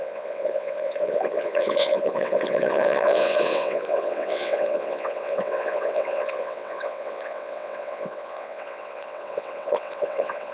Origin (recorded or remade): remade